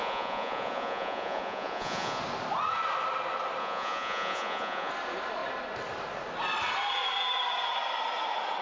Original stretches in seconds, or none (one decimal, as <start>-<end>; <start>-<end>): 2.2-3.6; 4.9-8.6